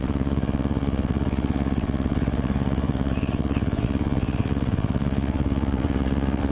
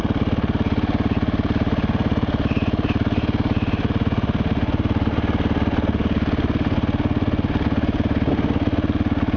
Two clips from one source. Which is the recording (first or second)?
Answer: second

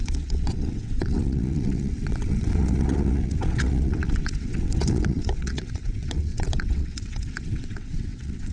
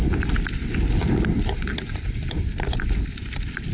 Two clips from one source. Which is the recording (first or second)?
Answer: second